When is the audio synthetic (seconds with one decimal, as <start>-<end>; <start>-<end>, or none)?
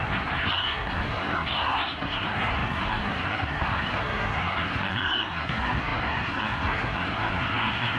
0.0-8.0